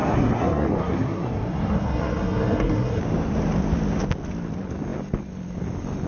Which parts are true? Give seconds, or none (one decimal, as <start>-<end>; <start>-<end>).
3.0-6.1